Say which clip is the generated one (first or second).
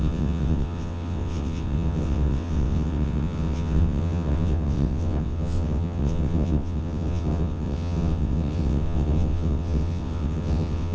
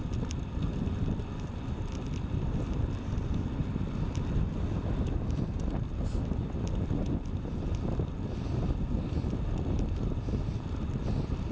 first